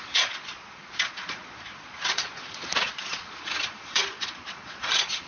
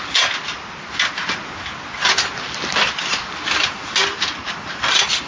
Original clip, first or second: second